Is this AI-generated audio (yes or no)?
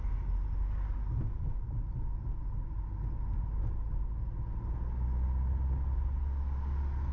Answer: no